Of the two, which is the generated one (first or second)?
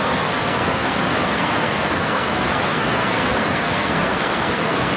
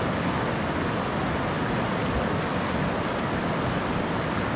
first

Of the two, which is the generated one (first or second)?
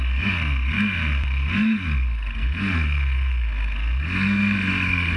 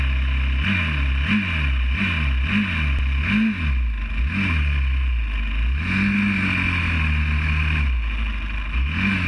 first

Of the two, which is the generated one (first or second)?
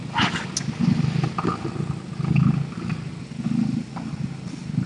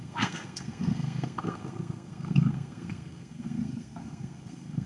second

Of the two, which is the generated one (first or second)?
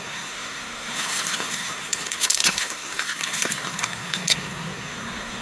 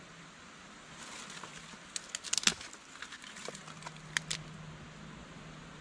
first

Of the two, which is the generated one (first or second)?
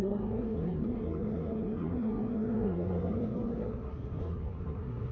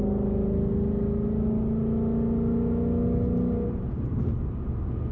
first